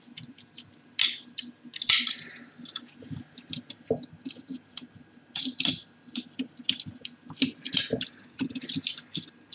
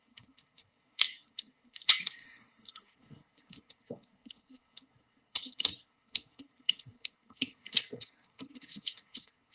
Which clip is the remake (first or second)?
second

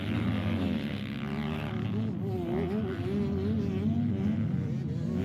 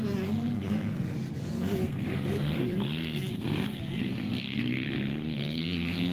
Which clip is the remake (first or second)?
second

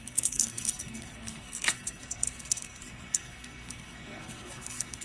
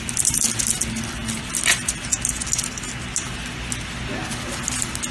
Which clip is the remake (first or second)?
first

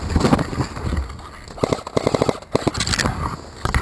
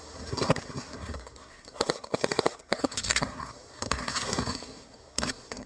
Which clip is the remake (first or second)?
second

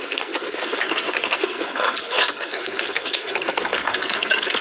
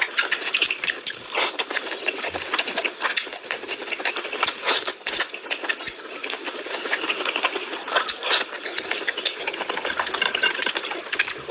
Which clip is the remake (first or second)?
first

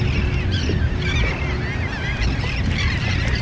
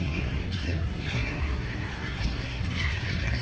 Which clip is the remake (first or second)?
second